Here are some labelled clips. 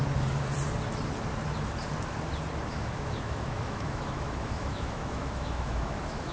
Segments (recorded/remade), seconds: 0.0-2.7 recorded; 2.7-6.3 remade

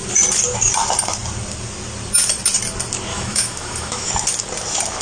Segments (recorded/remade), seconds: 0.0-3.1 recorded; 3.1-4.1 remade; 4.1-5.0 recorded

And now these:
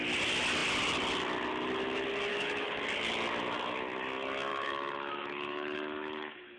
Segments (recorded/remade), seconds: 0.0-2.3 recorded; 2.3-2.8 remade; 2.8-4.5 recorded; 4.5-6.6 remade